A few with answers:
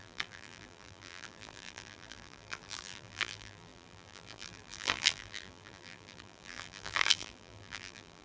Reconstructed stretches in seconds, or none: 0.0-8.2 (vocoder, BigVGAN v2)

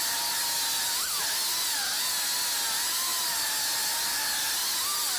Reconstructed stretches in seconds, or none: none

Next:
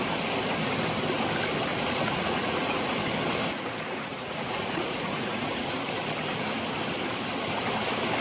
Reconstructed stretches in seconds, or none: 1.7-2.9 (vocoder, Vocos); 4.1-5.7